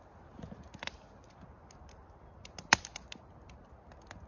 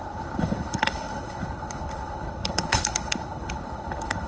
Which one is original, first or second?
first